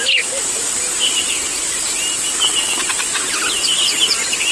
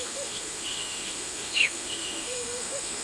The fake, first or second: second